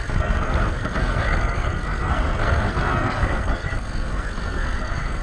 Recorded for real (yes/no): no